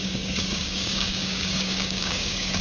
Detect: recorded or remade remade